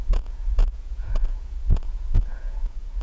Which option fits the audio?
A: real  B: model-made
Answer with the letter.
B